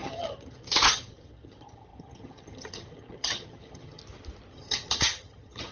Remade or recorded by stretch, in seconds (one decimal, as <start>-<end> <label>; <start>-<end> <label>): 0.0-4.0 remade; 4.0-4.5 recorded; 4.5-5.7 remade